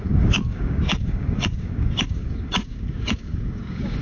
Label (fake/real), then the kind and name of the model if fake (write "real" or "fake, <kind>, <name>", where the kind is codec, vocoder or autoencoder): fake, codec, DAC